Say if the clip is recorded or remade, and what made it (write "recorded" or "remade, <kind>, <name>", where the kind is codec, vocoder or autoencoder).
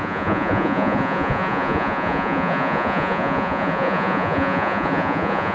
remade, vocoder, Vocos